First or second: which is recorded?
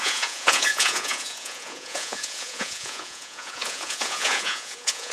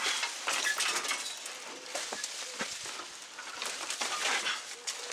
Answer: second